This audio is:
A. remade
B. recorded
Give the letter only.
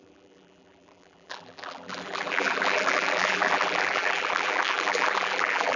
A